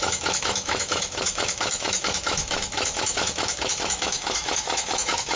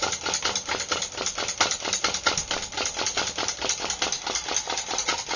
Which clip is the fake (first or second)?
first